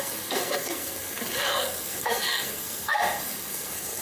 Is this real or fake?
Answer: fake